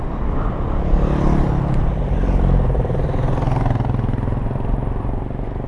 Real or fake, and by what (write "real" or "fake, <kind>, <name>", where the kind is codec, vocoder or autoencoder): fake, vocoder, BigVGAN v2